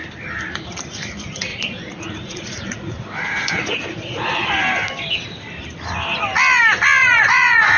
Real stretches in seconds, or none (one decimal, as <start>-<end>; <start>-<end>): 0.0-1.5; 4.5-7.0